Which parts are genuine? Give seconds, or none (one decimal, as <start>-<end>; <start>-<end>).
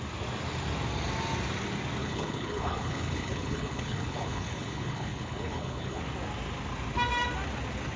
0.0-2.0; 6.0-8.0